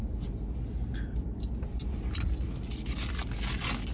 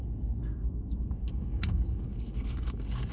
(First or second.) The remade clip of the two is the second